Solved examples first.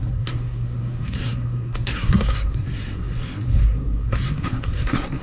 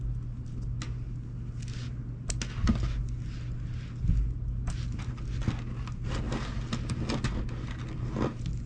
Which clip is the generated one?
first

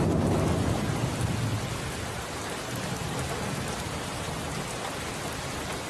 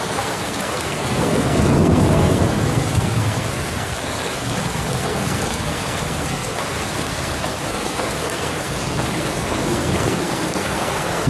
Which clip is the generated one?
second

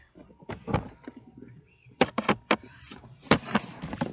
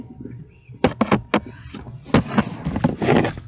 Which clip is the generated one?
first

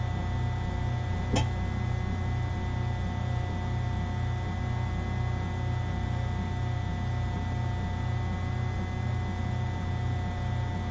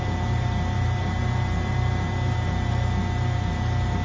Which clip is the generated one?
second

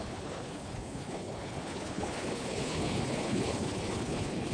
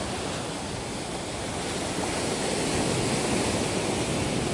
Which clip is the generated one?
first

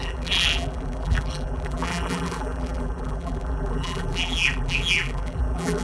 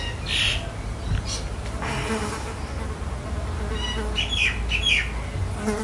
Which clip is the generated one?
first